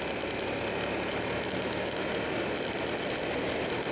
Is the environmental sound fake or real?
real